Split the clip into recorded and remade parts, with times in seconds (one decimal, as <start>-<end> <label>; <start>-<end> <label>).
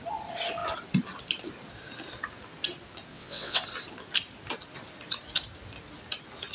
0.0-3.1 recorded; 3.1-3.6 remade; 3.6-6.5 recorded